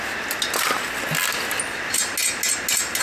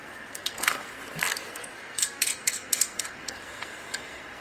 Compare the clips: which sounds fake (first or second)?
second